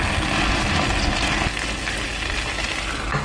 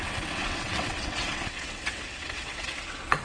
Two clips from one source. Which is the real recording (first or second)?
first